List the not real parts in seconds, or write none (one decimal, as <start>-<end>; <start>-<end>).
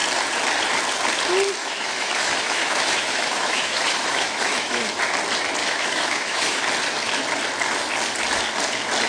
1.6-4.9; 5.6-6.6